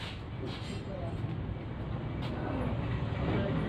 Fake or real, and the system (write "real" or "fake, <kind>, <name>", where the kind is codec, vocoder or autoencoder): real